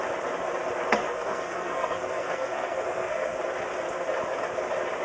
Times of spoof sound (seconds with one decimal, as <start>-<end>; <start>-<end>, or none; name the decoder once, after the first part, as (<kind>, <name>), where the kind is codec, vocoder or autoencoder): 0.9-3.4 (codec, SNAC)